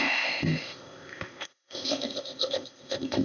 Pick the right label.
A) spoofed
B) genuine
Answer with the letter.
A